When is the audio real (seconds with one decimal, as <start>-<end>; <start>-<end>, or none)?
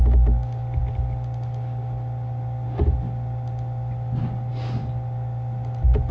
0.0-6.1